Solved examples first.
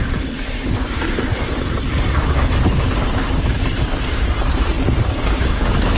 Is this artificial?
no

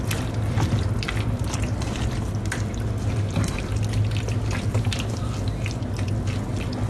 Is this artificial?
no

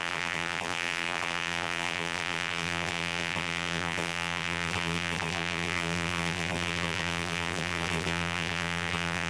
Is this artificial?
yes